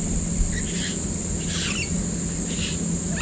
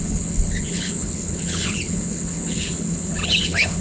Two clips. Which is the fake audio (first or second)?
second